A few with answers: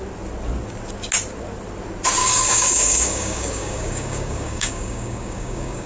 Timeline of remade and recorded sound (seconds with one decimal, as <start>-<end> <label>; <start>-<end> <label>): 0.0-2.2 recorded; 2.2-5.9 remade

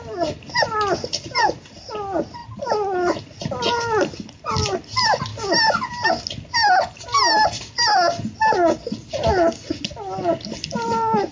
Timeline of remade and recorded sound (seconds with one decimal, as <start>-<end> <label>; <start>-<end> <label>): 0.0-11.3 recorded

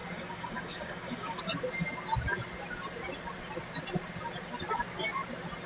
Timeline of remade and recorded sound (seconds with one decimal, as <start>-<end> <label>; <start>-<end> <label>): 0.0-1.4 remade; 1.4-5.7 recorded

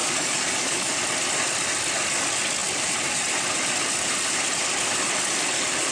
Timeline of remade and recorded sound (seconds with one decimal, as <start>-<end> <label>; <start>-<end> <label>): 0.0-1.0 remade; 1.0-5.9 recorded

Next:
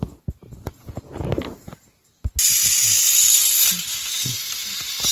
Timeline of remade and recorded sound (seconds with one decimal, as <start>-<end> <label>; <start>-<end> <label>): 0.0-5.1 recorded

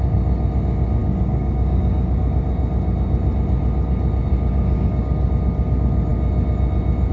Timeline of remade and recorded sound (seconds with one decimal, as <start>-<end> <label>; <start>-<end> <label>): 0.0-1.0 recorded; 1.0-2.2 remade; 2.2-4.3 recorded; 4.3-5.3 remade; 5.3-7.1 recorded

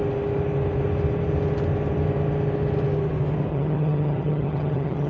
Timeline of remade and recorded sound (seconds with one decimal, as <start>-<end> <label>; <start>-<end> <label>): 0.0-3.5 recorded; 3.5-5.1 remade